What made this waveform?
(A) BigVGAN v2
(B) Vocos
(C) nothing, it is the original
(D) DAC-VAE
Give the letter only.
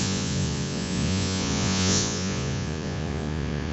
B